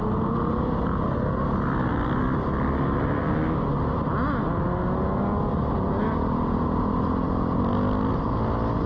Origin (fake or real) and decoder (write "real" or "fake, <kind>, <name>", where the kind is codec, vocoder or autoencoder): real